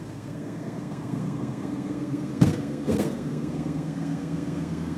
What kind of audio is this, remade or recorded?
remade